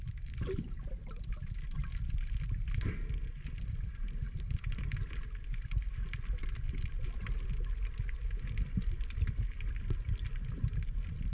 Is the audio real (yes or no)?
yes